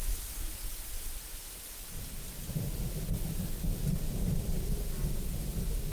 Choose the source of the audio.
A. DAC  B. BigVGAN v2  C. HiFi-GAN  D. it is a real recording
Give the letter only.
D